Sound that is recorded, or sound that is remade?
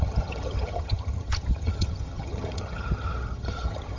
remade